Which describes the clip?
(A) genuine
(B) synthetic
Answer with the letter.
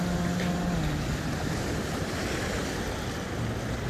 A